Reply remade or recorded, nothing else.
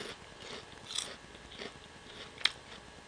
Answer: recorded